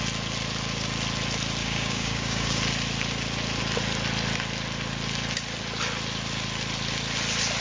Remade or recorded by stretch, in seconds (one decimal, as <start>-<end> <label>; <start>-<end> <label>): 0.0-1.6 recorded; 1.6-2.6 remade; 2.6-7.6 recorded